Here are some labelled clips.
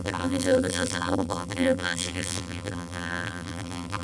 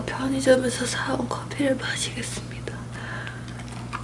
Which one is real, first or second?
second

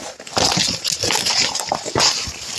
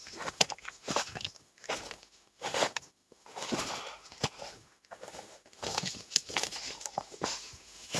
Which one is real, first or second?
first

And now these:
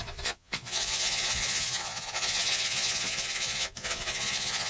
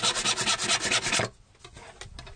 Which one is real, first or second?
second